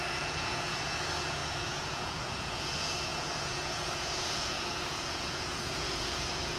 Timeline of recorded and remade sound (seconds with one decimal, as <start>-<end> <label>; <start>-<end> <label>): 0.0-6.6 remade